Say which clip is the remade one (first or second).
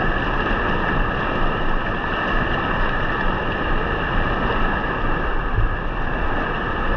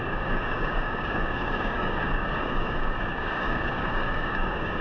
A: second